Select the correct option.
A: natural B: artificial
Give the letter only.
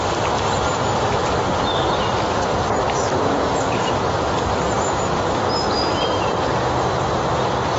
A